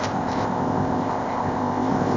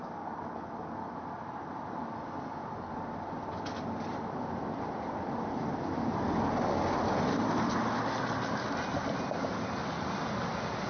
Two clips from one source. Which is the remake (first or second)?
first